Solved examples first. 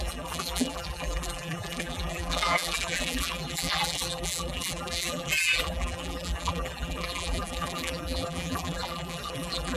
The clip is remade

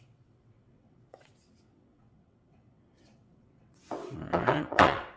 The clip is remade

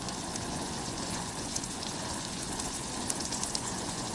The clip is remade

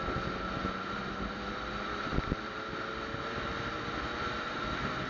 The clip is recorded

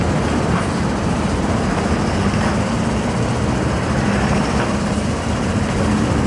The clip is recorded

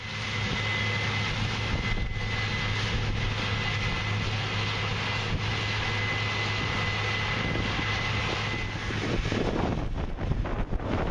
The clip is recorded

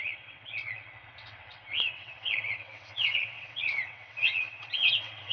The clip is remade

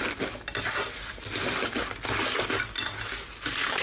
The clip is recorded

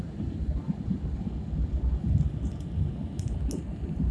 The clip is recorded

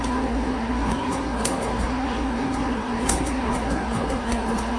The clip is remade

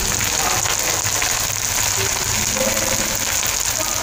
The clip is recorded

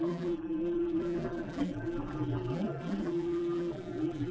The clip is remade